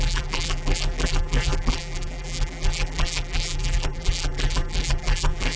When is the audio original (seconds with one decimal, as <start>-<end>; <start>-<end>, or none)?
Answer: none